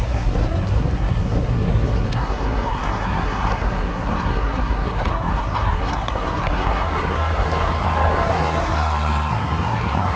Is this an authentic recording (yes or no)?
no